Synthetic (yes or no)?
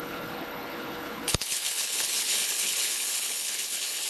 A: yes